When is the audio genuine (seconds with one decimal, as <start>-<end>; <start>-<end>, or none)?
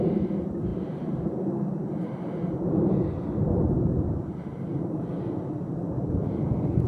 5.1-5.7